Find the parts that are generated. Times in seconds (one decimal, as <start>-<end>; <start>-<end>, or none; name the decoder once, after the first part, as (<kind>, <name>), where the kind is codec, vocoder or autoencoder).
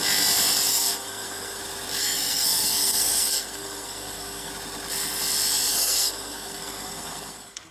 0.7-1.6 (codec, SNAC); 2.0-4.5; 5.7-7.7